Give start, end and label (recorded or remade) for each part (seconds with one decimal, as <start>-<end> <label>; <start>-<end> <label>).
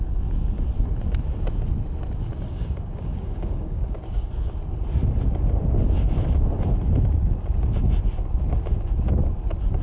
0.0-2.3 recorded; 2.3-4.3 remade; 4.3-9.8 recorded